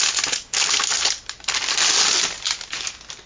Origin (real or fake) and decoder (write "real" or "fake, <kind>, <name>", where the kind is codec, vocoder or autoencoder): real